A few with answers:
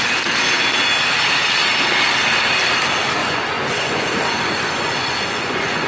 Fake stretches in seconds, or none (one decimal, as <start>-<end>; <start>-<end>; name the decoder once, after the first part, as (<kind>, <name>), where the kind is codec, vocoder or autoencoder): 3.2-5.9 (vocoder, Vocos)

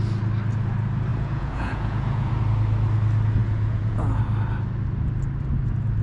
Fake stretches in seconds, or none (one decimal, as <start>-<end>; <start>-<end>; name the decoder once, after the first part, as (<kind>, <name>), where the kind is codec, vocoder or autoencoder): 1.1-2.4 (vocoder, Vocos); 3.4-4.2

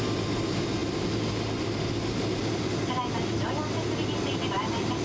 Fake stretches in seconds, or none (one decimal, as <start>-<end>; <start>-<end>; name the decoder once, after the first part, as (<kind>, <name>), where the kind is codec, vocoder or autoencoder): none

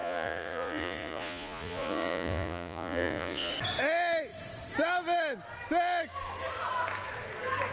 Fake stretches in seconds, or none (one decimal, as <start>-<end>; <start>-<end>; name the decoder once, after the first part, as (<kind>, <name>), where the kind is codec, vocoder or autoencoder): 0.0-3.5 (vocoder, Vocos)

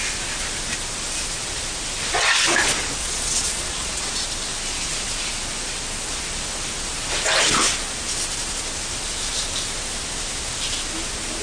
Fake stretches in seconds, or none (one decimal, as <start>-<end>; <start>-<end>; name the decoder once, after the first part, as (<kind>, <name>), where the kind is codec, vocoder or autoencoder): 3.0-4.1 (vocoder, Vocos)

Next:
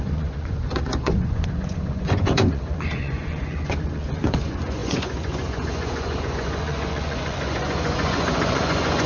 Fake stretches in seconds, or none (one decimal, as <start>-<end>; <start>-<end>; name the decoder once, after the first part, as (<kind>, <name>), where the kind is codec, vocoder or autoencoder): 0.0-9.1 (vocoder, Vocos)